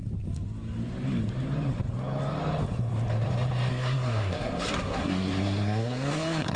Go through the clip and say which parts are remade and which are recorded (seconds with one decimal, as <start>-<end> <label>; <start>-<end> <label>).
0.0-3.7 recorded; 3.7-6.6 remade